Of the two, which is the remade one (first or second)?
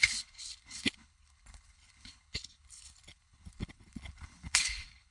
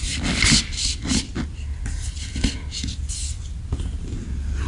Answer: first